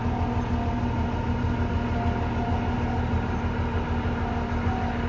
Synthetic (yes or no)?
no